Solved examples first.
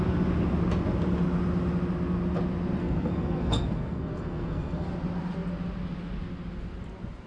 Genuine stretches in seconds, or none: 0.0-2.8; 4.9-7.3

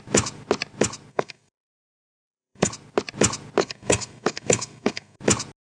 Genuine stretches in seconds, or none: 0.0-1.1; 2.7-3.6; 5.2-5.7

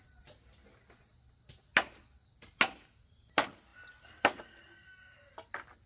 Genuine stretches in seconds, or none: 0.0-5.9

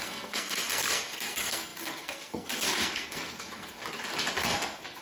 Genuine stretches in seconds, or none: 3.8-4.4

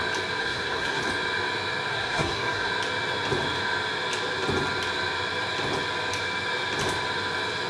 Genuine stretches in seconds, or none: 0.0-0.4; 1.0-1.9; 2.7-7.7

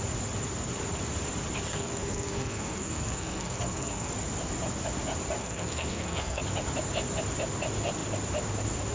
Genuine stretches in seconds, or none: 0.0-1.7; 4.1-5.4; 6.4-8.9

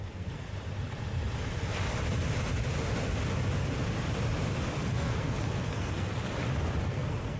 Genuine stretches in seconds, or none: 0.5-4.9; 6.1-6.8

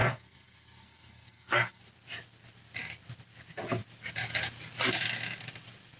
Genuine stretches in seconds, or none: 1.8-6.0